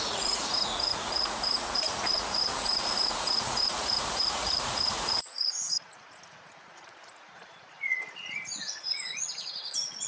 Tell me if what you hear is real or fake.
fake